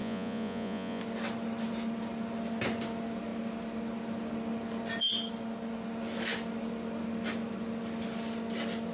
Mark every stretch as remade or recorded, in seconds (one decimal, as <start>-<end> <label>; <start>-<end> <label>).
0.0-1.0 remade; 1.0-8.9 recorded